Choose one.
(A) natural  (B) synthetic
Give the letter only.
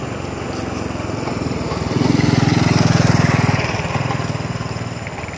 A